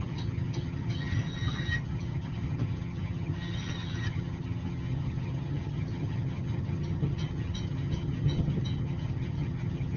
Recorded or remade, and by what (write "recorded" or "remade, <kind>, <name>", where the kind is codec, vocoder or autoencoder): remade, vocoder, HiFi-GAN